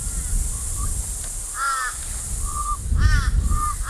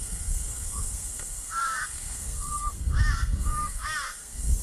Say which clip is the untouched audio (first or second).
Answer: first